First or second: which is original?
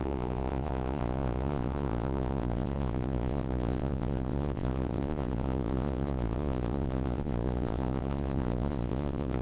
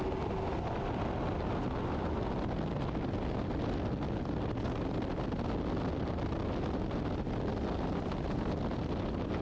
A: second